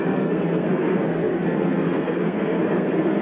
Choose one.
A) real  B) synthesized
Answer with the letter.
B